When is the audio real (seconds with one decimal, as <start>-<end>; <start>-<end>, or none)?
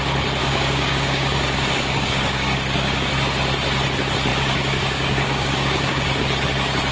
0.0-0.4; 3.1-4.3; 6.2-6.9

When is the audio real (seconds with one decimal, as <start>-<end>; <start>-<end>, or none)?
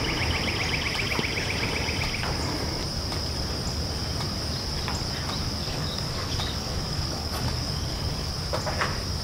0.0-5.6; 8.3-9.2